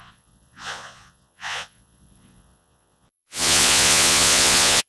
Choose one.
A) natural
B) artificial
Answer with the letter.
B